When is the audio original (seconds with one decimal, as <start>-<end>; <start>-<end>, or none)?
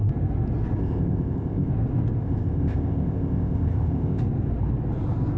0.0-0.8; 1.7-2.2; 4.2-5.4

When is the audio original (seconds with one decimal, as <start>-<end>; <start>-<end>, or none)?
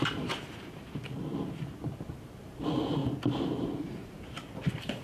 0.0-2.1; 3.0-3.5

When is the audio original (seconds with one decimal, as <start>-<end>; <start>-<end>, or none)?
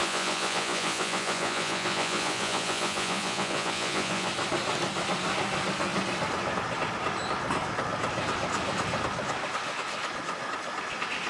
4.3-11.3